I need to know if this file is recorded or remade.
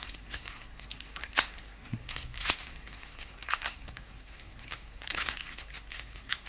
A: remade